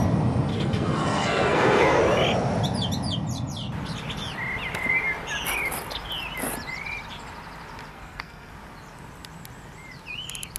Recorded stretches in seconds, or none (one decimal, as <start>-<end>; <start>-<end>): 0.0-0.5; 2.0-7.9; 8.5-10.6